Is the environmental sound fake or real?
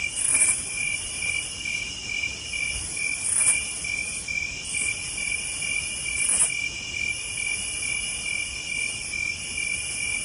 real